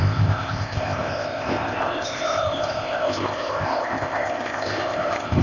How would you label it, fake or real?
fake